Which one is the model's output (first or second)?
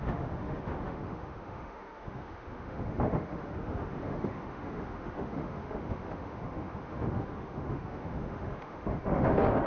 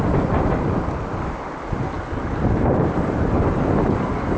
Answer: first